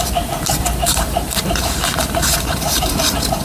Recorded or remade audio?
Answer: remade